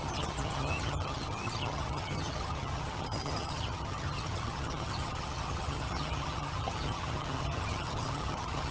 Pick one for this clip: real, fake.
fake